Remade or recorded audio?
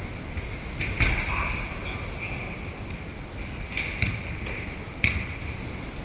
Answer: recorded